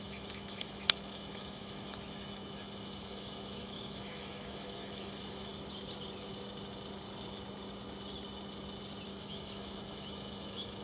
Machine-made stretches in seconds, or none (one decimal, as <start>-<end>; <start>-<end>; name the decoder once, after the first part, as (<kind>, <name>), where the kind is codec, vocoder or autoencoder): 0.0-5.5 (autoencoder, DAC-VAE); 9.1-10.8